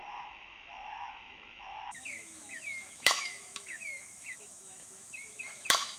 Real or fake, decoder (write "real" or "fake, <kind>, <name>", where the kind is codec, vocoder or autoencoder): fake, autoencoder, DAC-VAE